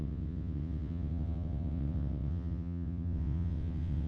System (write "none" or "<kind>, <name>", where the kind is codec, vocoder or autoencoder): vocoder, WaveNeXt